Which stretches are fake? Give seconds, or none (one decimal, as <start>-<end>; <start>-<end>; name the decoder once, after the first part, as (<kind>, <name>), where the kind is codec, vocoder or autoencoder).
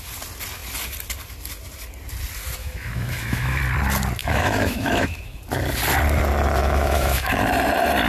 2.6-3.6 (autoencoder, DAC-VAE); 4.2-5.4; 6.6-7.4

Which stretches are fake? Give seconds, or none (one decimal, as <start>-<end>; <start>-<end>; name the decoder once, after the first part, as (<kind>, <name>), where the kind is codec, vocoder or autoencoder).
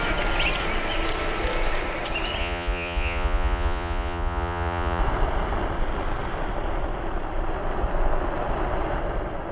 2.4-5.0 (vocoder, Vocos)